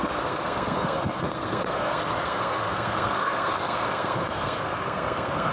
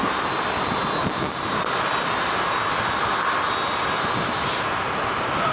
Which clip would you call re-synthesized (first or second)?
first